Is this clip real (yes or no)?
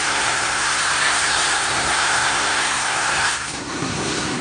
no